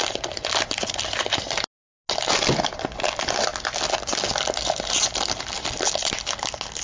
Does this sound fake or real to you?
real